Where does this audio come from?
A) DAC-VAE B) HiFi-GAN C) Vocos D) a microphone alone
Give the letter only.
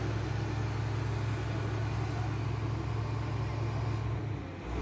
D